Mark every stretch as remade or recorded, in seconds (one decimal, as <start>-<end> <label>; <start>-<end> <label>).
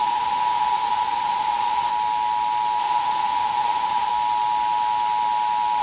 0.0-1.9 remade; 1.9-2.8 recorded; 2.8-4.1 remade; 4.1-5.8 recorded